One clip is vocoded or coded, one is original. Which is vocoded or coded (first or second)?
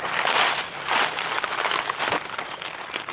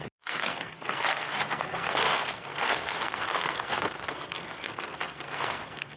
second